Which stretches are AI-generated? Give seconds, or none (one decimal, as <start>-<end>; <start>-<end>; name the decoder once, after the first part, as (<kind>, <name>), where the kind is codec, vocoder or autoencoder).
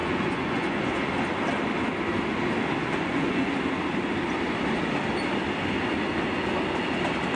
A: 0.0-1.1 (vocoder, Vocos); 2.8-3.5